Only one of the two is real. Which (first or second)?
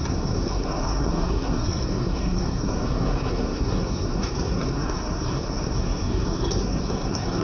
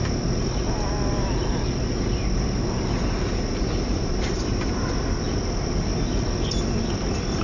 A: second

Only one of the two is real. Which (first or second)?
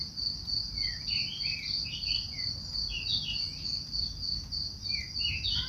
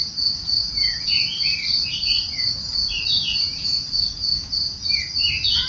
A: first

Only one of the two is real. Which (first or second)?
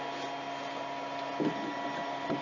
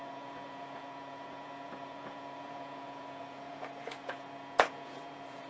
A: first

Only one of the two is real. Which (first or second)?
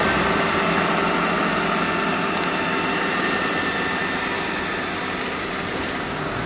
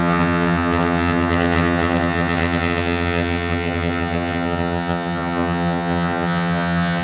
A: first